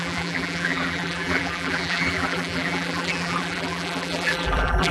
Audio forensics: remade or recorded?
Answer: remade